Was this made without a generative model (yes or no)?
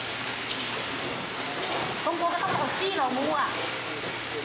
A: yes